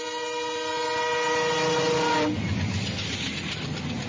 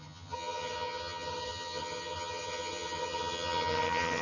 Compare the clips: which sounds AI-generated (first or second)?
second